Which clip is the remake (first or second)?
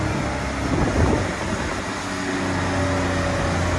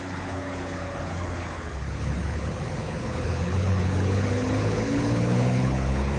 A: second